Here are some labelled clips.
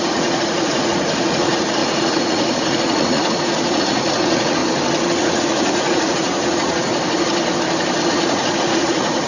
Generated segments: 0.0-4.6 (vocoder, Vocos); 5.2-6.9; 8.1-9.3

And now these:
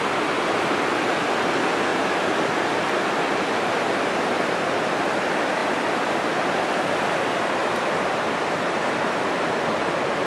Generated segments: 5.6-6.9 (vocoder, BigVGAN v2)

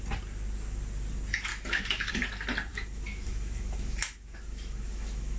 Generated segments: 1.5-2.1 (autoencoder, DAC-VAE); 2.7-5.4

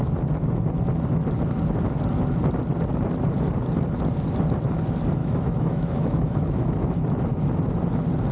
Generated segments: 5.2-6.9 (autoencoder, DAC-VAE)

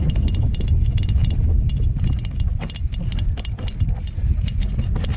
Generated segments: none

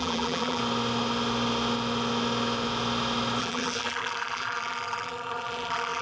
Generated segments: 0.0-0.6 (vocoder, BigVGAN v2); 3.4-6.0

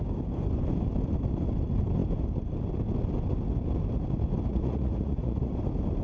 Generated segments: 4.5-5.5 (vocoder, Vocos)

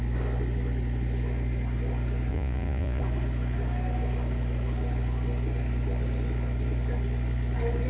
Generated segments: 2.3-3.0 (vocoder, Vocos)